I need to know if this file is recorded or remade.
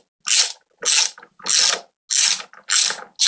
recorded